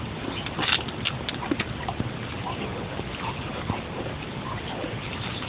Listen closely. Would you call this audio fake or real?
real